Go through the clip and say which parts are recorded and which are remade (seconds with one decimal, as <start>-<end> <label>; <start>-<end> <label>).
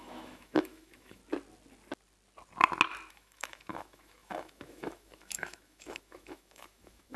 0.0-1.2 remade; 1.2-3.1 recorded; 3.1-7.2 remade